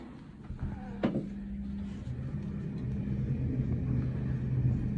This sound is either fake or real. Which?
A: real